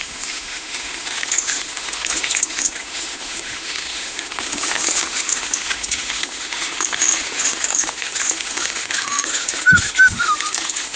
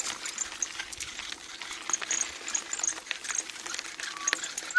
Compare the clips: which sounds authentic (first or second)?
second